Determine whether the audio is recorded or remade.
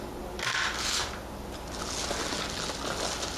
recorded